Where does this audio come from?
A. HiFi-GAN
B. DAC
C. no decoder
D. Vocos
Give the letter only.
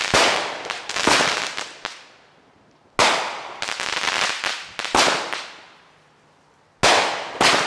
C